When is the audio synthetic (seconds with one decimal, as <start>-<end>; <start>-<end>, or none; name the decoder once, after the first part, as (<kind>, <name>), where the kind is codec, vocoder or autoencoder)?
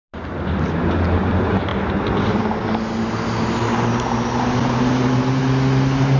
none